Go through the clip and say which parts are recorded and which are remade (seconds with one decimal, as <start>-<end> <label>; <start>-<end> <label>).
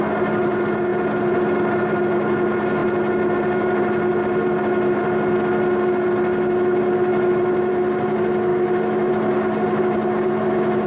0.0-10.9 recorded